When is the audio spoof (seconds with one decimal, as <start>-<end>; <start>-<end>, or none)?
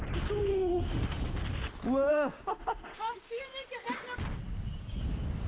0.5-1.2; 2.1-3.4